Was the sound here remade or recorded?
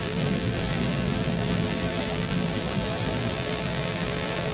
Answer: remade